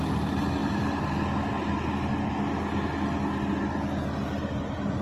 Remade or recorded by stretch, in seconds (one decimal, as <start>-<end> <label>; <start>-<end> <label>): 0.0-5.0 recorded